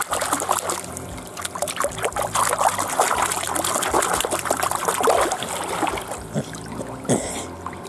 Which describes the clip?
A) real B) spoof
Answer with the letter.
A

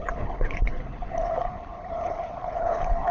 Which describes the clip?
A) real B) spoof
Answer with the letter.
B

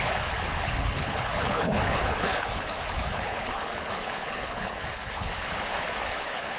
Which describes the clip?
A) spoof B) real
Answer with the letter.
A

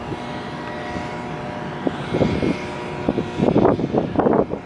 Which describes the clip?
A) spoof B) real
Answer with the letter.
B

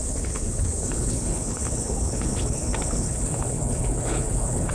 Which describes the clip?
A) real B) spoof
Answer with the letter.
B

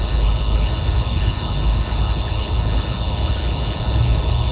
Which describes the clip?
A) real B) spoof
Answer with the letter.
B